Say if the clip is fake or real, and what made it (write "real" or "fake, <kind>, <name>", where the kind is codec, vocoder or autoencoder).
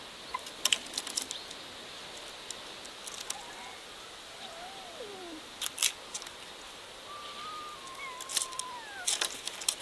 real